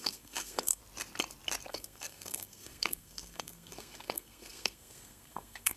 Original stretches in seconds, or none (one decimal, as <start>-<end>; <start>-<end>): 0.8-1.7